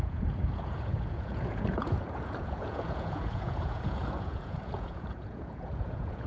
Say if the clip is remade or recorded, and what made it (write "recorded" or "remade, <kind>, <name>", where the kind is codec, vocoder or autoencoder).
remade, vocoder, Vocos